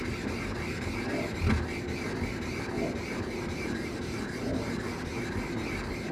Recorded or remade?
recorded